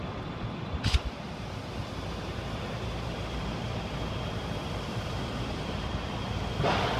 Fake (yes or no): yes